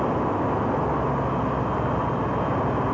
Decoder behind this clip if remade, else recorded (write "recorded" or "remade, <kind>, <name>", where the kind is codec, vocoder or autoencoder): recorded